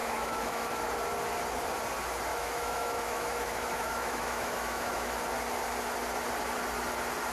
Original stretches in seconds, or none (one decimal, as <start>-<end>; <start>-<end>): 0.7-2.3; 5.2-7.3